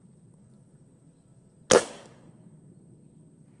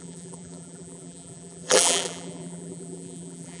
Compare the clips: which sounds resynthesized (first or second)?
second